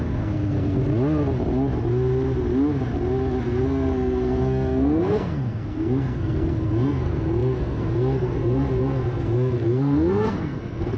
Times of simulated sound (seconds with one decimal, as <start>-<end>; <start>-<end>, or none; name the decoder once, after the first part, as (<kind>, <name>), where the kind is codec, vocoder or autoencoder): 0.0-0.8 (codec, SNAC); 3.4-11.0